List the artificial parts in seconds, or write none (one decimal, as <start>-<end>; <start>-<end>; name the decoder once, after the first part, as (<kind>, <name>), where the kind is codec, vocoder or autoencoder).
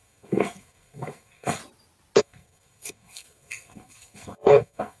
0.0-1.6 (codec, SNAC); 2.2-5.0